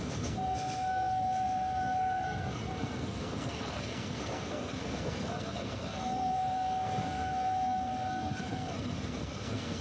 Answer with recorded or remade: remade